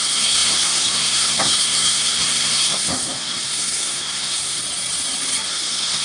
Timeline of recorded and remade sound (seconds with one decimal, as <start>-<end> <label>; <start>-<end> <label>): 0.0-4.6 remade; 4.6-5.5 recorded; 5.5-6.0 remade